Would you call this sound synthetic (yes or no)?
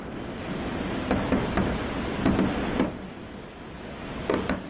no